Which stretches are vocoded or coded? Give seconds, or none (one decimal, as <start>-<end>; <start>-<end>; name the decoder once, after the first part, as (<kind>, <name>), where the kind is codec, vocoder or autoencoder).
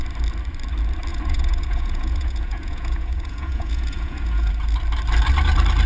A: 1.1-4.5 (vocoder, Vocos)